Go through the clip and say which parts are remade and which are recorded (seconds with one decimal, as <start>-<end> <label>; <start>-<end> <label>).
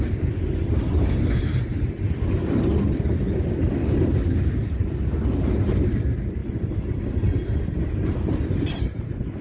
0.0-9.4 recorded